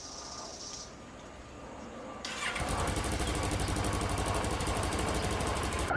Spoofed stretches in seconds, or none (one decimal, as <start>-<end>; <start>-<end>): none

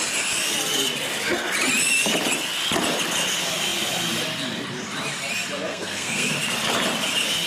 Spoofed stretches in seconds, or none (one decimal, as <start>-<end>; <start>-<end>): 5.7-6.3

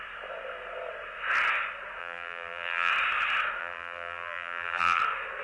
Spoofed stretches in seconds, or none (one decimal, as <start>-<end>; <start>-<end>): 2.0-2.9; 3.6-5.0

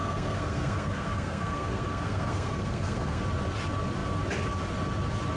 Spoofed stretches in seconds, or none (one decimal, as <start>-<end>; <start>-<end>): 0.0-3.2

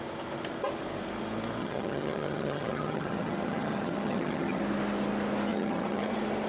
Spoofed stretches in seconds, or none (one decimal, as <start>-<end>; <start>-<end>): 1.6-4.6; 5.5-6.1

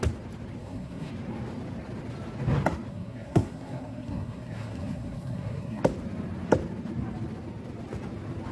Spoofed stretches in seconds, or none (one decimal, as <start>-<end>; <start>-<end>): 0.6-1.1; 2.9-5.8

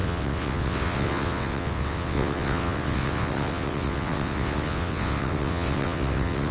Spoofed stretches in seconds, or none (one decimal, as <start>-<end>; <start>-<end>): 0.0-6.5